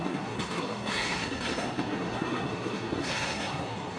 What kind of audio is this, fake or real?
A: fake